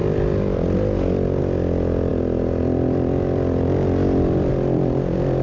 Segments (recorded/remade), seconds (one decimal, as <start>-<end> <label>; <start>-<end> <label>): 0.0-5.4 remade